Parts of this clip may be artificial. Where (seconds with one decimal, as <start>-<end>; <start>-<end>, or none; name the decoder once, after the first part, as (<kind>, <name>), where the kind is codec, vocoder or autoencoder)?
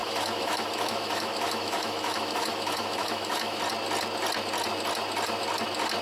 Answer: 0.0-3.6 (autoencoder, DAC-VAE)